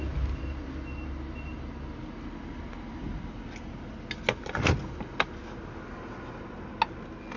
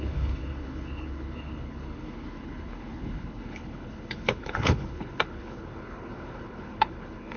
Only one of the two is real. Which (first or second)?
first